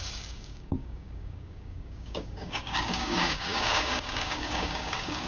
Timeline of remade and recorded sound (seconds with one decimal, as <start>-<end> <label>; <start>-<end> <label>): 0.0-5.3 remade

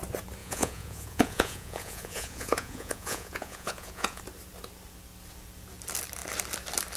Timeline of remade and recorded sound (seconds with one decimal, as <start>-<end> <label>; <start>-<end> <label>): 0.0-0.4 recorded; 0.4-4.2 remade; 4.2-7.0 recorded

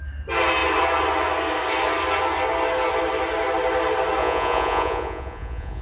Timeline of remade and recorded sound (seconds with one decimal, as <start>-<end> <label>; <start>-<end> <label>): 0.0-4.2 recorded; 4.2-5.8 remade

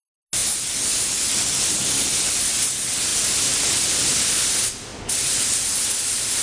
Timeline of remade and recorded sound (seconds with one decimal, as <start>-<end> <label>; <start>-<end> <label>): 0.0-6.4 recorded